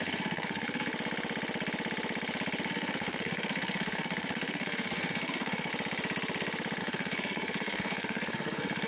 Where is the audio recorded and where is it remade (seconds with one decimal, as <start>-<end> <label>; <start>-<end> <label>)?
0.0-0.9 remade; 0.9-2.7 recorded; 2.7-5.7 remade; 5.7-6.8 recorded; 6.8-8.9 remade